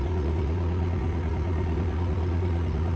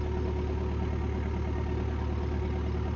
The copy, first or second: first